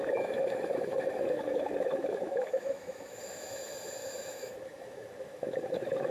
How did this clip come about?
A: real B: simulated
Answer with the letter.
B